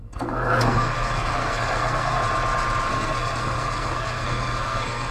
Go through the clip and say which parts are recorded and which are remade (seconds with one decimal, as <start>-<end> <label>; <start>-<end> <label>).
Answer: 0.0-2.2 remade; 2.2-2.9 recorded; 2.9-5.1 remade

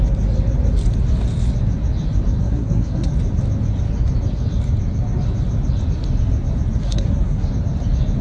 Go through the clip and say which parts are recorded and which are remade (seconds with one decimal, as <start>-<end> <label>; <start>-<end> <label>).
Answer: 0.0-2.4 recorded; 2.4-3.1 remade; 3.1-6.8 recorded; 6.8-7.5 remade; 7.5-8.2 recorded